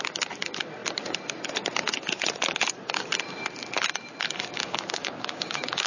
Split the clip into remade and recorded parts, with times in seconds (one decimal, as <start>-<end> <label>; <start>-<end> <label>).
0.0-4.6 recorded; 4.6-5.9 remade